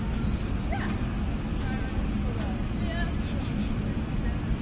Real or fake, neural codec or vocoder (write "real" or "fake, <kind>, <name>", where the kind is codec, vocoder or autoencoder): real